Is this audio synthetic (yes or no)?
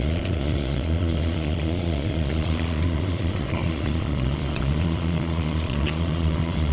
yes